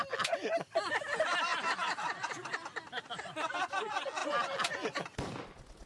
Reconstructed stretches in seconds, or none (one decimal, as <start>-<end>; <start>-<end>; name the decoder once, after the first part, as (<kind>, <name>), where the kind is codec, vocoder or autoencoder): 1.5-3.0 (vocoder, BigVGAN v2)